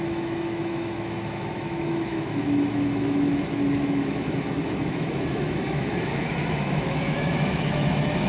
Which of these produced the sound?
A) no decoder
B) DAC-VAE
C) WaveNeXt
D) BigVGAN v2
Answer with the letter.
B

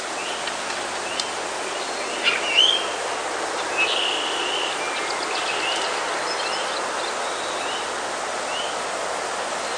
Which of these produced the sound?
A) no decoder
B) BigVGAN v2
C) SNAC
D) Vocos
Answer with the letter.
A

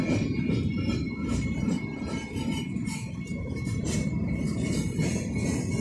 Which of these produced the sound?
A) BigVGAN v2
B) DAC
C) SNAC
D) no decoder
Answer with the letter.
A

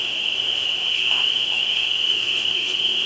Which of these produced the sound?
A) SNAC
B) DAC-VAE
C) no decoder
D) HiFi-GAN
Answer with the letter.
B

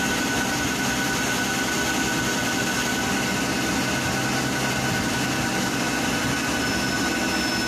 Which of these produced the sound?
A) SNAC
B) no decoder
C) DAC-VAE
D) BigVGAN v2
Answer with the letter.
B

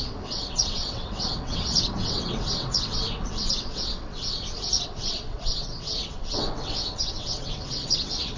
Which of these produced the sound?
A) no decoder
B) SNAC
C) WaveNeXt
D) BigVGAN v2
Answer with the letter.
C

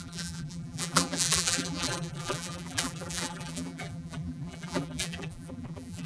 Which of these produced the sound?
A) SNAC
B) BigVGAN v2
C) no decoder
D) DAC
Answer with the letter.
B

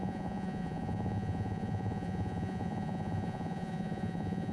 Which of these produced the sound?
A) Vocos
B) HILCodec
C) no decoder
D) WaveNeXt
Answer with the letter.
A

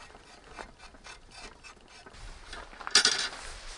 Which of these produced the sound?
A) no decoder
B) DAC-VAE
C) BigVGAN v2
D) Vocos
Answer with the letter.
A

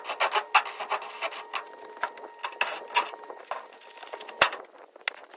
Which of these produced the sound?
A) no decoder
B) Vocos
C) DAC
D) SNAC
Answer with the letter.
A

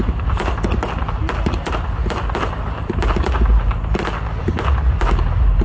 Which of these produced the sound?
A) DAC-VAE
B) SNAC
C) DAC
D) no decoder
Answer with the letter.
D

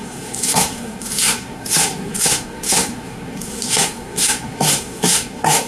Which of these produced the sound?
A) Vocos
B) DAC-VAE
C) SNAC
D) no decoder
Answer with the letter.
C